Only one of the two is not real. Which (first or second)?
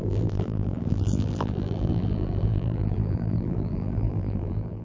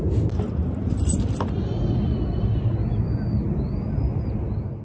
first